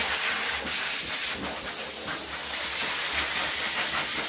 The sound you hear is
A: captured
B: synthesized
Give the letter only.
A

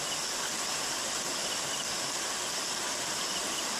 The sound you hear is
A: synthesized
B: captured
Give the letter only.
B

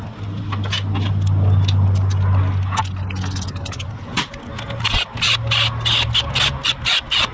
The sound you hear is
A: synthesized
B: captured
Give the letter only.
B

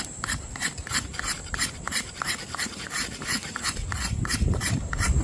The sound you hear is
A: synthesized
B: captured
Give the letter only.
A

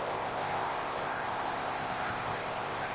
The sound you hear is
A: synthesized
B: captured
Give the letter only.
A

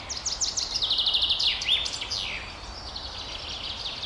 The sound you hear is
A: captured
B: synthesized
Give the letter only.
A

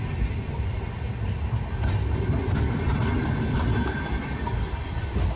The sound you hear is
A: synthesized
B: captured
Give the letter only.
B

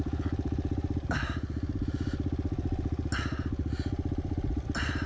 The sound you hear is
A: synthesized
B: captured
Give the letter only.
B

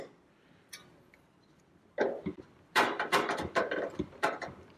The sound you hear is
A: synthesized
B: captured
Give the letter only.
A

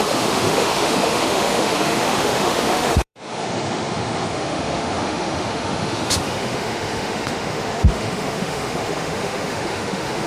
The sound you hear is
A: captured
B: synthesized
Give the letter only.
B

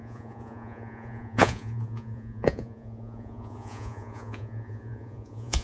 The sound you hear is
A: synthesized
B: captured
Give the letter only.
A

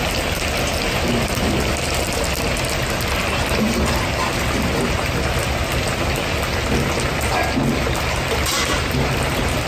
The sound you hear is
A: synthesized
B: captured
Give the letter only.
B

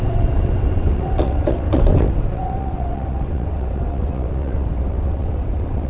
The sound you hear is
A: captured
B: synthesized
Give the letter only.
B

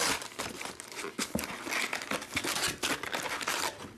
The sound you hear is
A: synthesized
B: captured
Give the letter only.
B